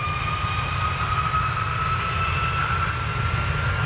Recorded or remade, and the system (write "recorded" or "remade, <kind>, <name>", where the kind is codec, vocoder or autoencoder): recorded